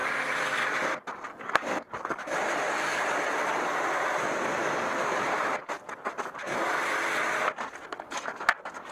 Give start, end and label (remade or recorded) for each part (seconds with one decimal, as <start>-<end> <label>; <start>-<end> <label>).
0.0-2.9 recorded; 2.9-6.0 remade; 6.0-8.9 recorded